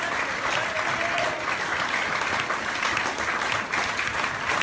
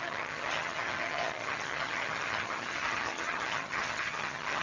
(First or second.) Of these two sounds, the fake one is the second